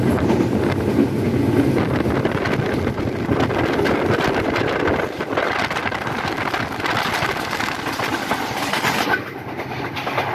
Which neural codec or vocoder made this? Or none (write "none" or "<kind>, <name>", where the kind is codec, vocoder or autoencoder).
none